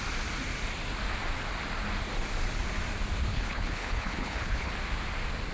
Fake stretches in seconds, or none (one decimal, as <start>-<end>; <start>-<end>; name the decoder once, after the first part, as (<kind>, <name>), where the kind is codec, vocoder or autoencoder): 3.3-4.7 (codec, HILCodec)